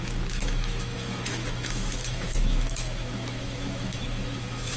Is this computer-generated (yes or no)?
yes